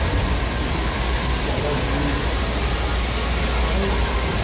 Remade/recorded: recorded